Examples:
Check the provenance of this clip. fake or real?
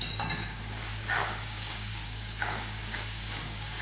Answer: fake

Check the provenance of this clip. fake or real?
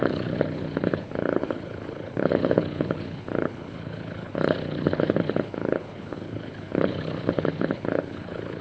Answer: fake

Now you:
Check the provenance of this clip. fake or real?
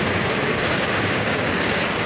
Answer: fake